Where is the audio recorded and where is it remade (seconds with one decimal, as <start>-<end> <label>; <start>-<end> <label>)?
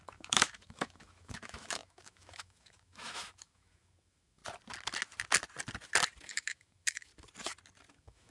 0.0-4.4 remade; 4.4-6.2 recorded; 6.2-7.1 remade; 7.1-7.9 recorded; 7.9-8.3 remade